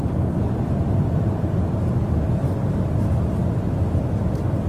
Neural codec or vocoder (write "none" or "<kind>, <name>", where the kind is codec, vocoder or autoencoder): none